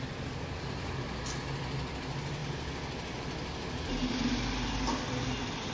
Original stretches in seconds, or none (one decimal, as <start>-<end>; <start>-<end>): 0.0-5.7